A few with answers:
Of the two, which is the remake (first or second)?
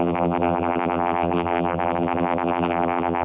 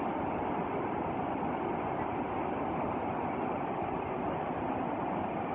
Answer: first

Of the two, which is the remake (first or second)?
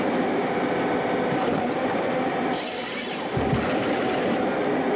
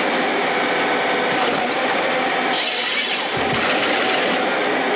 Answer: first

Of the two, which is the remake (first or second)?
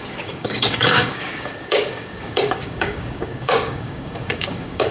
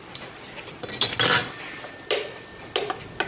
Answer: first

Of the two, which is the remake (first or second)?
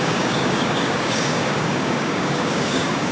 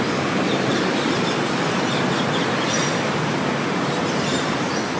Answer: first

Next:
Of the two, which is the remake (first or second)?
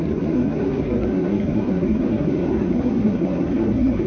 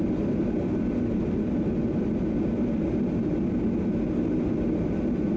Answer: first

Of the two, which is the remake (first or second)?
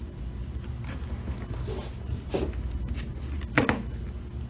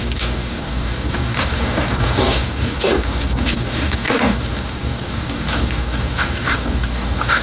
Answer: second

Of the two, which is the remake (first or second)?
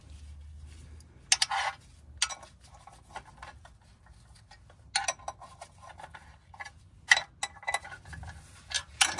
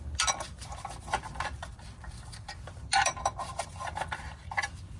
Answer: second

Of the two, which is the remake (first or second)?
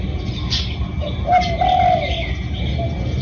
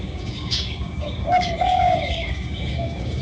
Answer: second